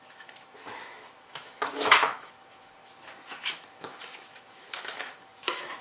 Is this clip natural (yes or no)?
no